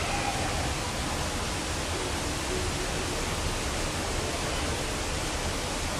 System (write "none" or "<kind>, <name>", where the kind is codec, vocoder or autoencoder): none